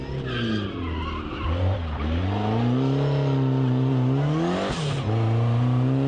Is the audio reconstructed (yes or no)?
no